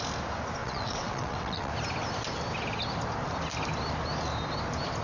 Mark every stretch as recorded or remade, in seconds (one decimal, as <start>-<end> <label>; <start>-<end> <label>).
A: 0.0-0.6 recorded; 0.6-1.7 remade; 1.7-5.0 recorded

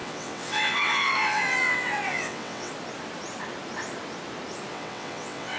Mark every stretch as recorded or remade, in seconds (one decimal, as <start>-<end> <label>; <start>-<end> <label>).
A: 0.0-2.7 remade; 2.7-4.7 recorded; 4.7-5.6 remade

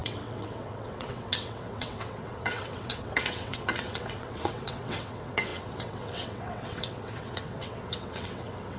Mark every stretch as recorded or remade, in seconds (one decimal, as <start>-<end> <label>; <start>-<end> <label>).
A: 0.0-8.8 remade

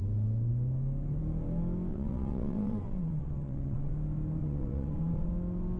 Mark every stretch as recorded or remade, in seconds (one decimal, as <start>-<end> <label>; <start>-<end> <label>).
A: 0.0-1.9 recorded; 1.9-3.9 remade; 3.9-4.4 recorded; 4.4-5.3 remade; 5.3-5.8 recorded

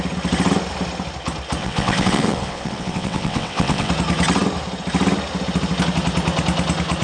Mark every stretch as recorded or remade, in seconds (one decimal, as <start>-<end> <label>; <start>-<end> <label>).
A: 0.0-1.6 recorded; 1.6-3.9 remade; 3.9-7.0 recorded

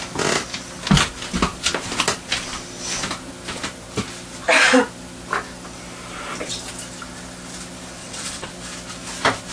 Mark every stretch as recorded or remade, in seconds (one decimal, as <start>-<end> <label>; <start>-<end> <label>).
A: 0.0-8.0 recorded; 8.0-8.5 remade; 8.5-9.5 recorded